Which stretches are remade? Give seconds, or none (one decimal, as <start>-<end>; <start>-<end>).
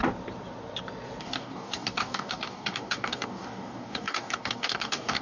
1.2-5.2